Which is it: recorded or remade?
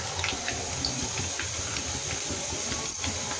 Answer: recorded